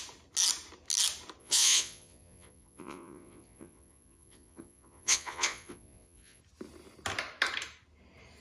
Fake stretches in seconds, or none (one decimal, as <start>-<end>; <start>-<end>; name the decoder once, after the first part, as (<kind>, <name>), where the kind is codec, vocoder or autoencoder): 1.4-6.4 (vocoder, Vocos)

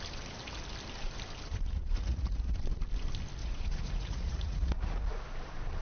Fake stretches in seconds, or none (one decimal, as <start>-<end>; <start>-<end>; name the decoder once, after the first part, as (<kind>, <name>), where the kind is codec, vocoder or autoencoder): 1.5-2.6 (vocoder, Vocos); 3.4-5.0

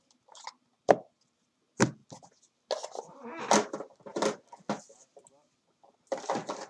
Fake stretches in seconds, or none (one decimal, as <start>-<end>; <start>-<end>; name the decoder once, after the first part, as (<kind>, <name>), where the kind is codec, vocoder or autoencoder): none